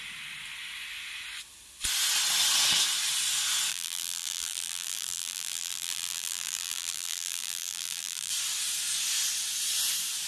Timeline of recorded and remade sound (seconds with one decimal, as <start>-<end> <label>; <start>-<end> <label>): 0.0-3.7 recorded; 3.7-8.3 remade; 8.3-10.3 recorded